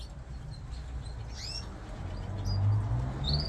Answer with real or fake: real